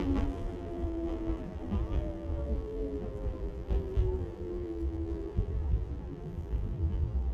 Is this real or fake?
fake